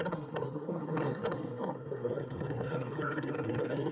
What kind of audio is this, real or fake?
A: fake